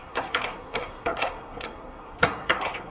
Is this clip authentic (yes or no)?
no